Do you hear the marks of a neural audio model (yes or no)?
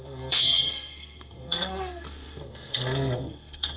yes